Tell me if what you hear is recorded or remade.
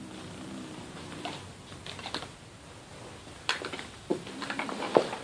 recorded